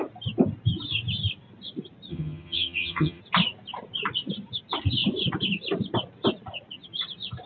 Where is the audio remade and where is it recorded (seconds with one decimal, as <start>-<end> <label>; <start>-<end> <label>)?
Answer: 0.0-2.1 recorded; 2.1-3.2 remade; 3.2-7.5 recorded